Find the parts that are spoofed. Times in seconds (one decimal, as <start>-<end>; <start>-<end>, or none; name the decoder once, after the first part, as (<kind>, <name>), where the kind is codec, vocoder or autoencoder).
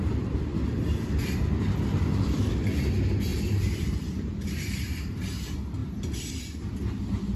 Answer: 0.5-2.5 (vocoder, BigVGAN v2); 3.3-5.1